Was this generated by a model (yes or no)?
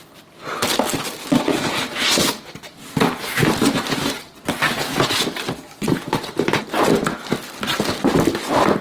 no